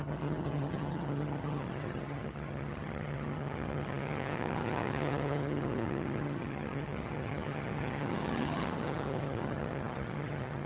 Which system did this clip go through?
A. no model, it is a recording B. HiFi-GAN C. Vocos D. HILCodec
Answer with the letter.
B